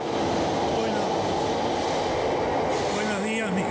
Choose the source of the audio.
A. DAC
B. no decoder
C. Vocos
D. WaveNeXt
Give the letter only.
B